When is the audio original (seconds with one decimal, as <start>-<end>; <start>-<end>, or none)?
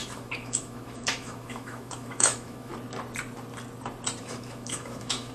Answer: 2.7-4.2